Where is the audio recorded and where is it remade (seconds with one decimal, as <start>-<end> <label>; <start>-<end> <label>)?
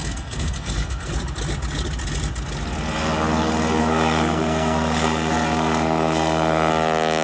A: 0.0-1.1 remade; 1.1-3.8 recorded; 3.8-6.7 remade; 6.7-7.2 recorded